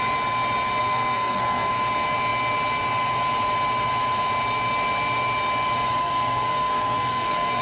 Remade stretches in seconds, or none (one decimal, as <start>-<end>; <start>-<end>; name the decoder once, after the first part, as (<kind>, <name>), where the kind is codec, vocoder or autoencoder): 0.8-1.7 (codec, SNAC); 6.0-7.6